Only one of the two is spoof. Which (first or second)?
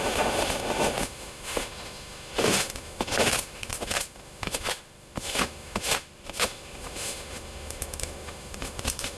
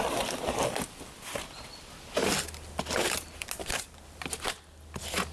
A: first